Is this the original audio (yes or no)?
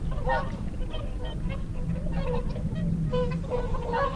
no